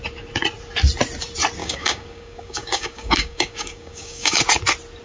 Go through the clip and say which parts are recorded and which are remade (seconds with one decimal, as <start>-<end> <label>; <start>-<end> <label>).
0.0-1.6 recorded; 1.6-4.4 remade; 4.4-5.0 recorded